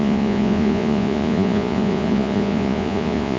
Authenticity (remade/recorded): remade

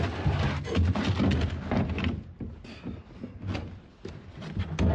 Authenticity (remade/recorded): recorded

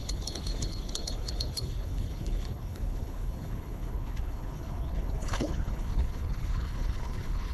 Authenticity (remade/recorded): remade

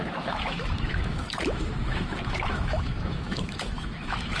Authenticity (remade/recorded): remade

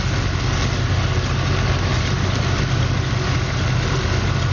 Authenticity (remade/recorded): recorded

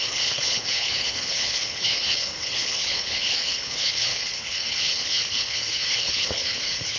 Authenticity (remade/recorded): remade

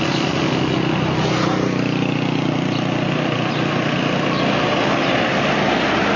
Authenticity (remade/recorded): recorded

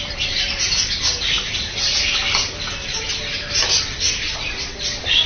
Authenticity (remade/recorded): recorded